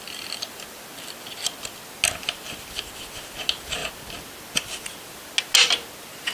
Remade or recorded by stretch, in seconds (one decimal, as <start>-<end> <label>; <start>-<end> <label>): 0.0-6.3 recorded